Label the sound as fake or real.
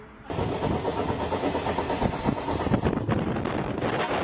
real